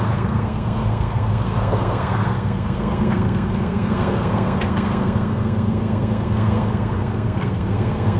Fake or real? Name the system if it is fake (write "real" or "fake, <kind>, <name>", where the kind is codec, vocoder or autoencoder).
fake, codec, SNAC